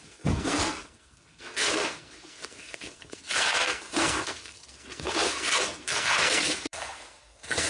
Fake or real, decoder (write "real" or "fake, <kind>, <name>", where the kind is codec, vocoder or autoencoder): fake, codec, SNAC